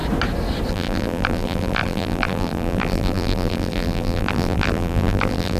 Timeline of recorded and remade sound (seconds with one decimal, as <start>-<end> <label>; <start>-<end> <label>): 0.0-0.7 recorded; 0.7-5.6 remade